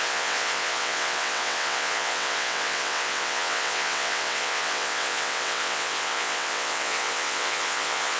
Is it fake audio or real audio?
fake